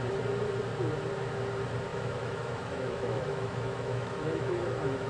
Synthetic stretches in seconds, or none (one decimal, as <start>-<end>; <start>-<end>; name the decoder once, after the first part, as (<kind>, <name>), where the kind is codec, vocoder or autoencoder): 1.9-5.1 (autoencoder, DAC-VAE)